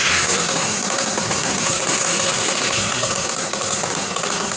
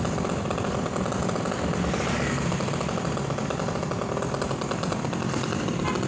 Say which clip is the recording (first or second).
second